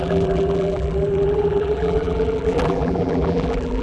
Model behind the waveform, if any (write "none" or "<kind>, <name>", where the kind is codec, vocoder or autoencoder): vocoder, BigVGAN v2